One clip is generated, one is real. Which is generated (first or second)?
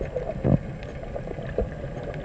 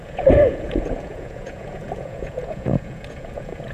second